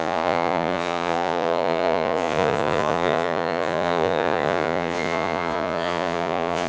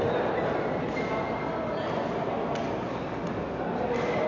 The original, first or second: second